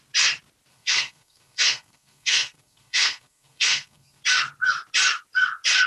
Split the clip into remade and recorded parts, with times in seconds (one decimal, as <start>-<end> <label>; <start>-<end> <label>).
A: 0.0-0.7 recorded; 0.7-4.2 remade; 4.2-5.9 recorded